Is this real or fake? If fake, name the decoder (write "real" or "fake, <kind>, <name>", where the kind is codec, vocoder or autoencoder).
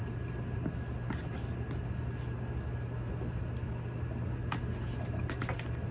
real